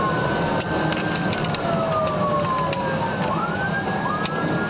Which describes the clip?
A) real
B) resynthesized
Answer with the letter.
A